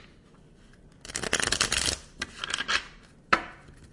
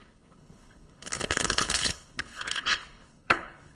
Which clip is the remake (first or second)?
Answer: second